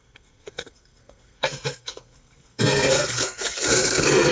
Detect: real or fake fake